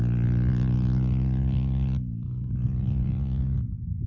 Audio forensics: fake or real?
real